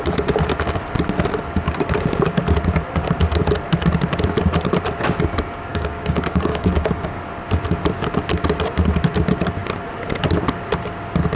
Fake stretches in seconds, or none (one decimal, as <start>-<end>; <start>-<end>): 5.7-7.2